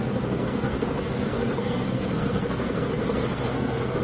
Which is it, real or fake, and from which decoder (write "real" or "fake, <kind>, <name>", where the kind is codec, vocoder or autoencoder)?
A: fake, codec, SNAC